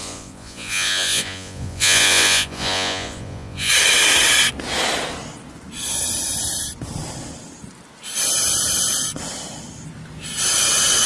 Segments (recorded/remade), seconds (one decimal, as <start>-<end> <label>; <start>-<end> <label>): 0.0-3.7 remade; 3.7-11.1 recorded